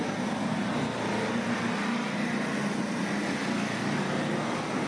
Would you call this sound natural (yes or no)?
yes